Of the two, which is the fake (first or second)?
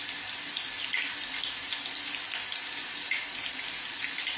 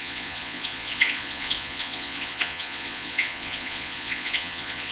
second